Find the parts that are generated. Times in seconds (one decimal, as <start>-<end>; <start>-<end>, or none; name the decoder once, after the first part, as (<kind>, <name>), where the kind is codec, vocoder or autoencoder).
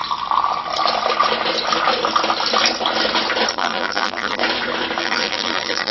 3.5-4.4 (vocoder, BigVGAN v2); 5.0-5.9